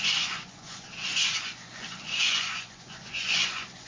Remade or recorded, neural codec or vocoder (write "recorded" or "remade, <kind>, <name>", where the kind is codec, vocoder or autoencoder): remade, vocoder, Vocos